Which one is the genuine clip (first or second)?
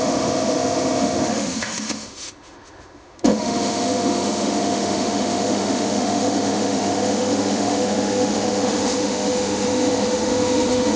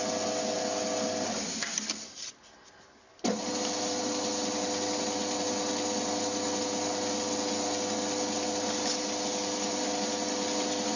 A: second